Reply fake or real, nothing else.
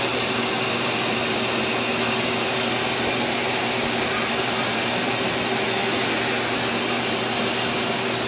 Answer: real